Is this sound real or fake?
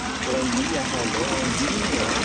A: real